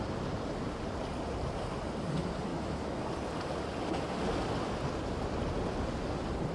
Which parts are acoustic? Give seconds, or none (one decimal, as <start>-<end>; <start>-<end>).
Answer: 0.0-2.5; 3.0-6.5